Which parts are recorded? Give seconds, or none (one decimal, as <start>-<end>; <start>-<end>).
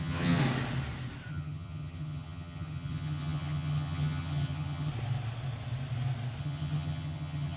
0.4-1.3; 4.9-6.4